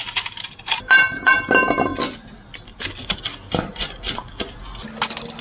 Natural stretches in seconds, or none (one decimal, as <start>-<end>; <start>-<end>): 1.9-5.4